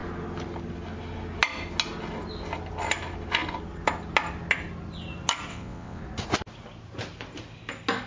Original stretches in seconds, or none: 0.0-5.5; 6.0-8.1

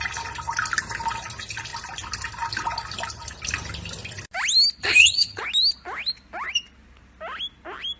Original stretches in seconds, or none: 0.0-4.8; 5.4-8.0

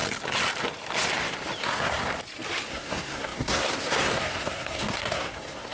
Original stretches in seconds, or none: 0.0-1.6; 2.0-2.7

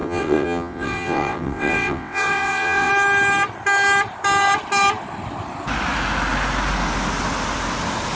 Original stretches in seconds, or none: 2.9-8.2

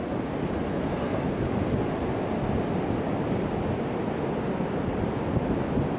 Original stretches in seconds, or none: 0.0-0.7; 1.4-6.0